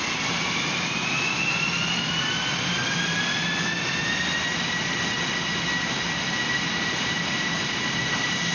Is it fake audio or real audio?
real